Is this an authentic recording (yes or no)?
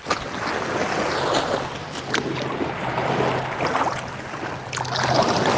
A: yes